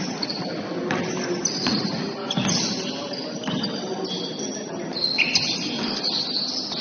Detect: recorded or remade recorded